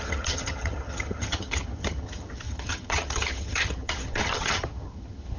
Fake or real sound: fake